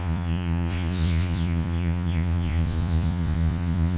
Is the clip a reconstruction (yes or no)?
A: yes